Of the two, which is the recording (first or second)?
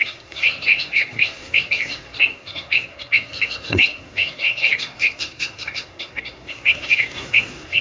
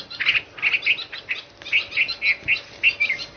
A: second